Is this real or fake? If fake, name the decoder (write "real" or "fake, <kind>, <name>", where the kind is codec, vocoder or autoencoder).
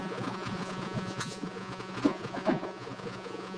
fake, vocoder, Vocos